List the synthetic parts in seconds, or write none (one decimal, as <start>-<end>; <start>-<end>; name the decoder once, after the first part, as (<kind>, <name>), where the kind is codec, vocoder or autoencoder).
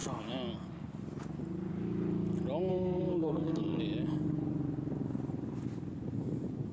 2.7-3.8 (codec, SNAC)